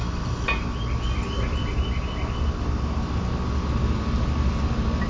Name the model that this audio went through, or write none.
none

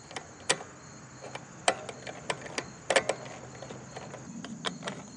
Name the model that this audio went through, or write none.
none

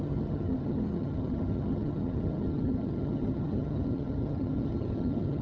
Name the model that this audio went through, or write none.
vocoder, HiFi-GAN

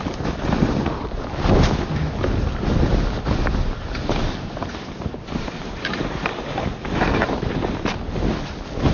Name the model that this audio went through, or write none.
none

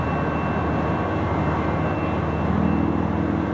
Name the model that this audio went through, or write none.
none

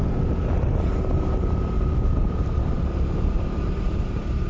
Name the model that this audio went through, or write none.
none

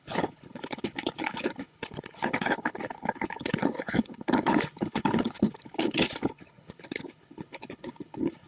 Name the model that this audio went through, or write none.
codec, HILCodec